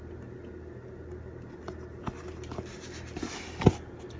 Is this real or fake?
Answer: real